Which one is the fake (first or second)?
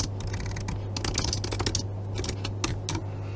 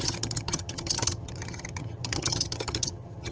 second